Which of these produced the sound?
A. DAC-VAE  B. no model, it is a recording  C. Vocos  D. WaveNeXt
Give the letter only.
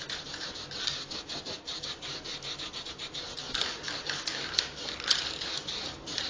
B